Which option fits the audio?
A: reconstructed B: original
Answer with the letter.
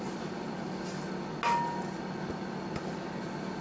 B